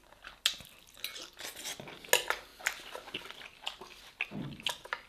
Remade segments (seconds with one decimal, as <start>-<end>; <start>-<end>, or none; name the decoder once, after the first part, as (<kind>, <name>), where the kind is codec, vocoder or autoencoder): none